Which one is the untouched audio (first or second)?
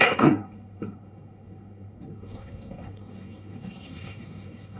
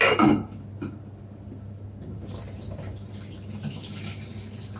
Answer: second